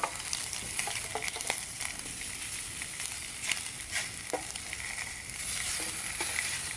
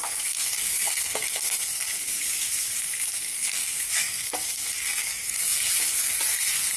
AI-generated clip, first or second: second